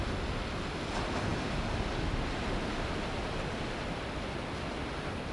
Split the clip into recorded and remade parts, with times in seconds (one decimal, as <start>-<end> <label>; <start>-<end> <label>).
0.0-5.3 recorded